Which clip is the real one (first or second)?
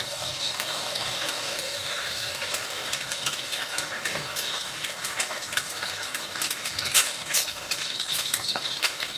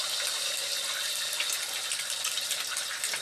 second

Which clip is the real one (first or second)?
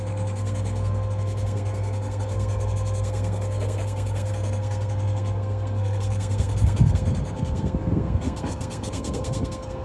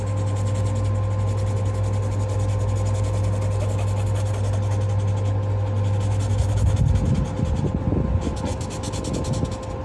second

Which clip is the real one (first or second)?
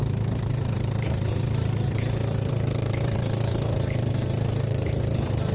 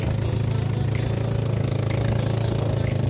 second